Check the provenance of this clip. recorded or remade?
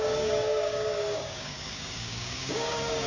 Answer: remade